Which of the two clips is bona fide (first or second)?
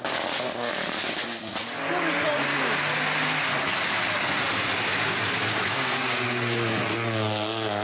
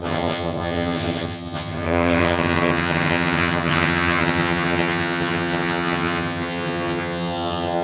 first